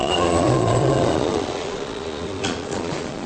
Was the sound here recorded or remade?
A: remade